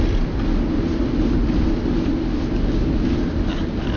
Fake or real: real